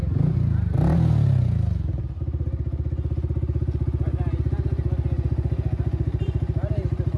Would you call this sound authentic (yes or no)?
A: yes